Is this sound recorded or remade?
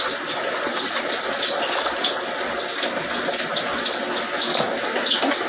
recorded